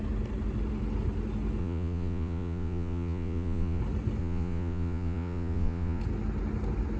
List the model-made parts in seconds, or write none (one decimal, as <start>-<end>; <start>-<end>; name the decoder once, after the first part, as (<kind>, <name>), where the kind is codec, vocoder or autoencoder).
1.6-3.8 (vocoder, Vocos); 4.2-6.0